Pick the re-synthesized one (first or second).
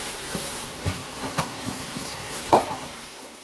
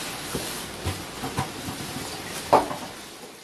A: first